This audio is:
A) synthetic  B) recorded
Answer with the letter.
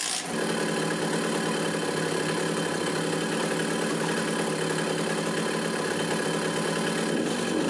B